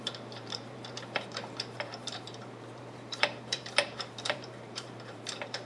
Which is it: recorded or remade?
remade